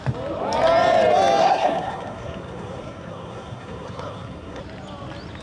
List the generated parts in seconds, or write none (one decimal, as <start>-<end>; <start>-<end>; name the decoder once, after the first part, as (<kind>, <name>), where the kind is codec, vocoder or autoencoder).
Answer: 1.4-4.6 (codec, SNAC)